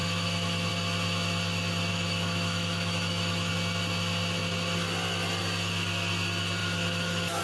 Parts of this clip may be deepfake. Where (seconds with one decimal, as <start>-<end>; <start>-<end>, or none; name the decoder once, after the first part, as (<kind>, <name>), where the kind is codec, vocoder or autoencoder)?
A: 0.0-0.7 (autoencoder, DAC-VAE); 1.9-3.5; 6.6-7.4